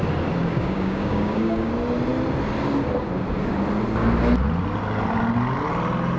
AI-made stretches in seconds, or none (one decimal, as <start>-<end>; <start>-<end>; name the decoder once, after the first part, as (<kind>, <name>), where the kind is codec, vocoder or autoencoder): 0.4-1.7 (codec, DAC)